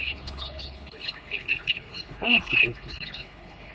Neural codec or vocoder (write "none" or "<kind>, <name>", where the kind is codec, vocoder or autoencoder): codec, HILCodec